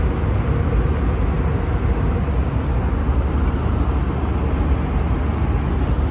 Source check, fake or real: real